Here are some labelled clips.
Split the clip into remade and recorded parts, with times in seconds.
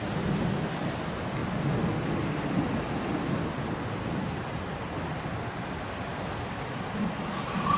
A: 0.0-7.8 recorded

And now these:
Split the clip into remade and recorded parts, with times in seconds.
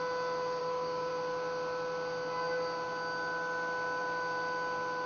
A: 0.0-0.6 recorded; 0.6-1.1 remade; 1.1-5.1 recorded